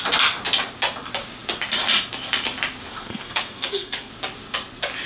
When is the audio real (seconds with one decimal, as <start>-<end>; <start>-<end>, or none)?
0.0-2.9; 4.1-5.1